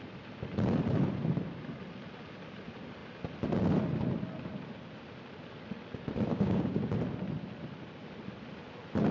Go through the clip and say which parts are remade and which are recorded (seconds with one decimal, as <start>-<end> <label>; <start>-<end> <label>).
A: 0.0-6.3 recorded; 6.3-6.9 remade; 6.9-9.1 recorded